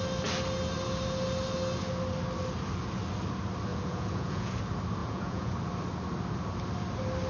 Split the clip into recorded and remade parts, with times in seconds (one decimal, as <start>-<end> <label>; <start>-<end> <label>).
0.0-3.7 recorded; 3.7-4.6 remade; 4.6-5.0 recorded; 5.0-5.5 remade; 5.5-7.3 recorded